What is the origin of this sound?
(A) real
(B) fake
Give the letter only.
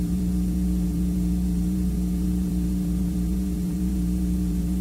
B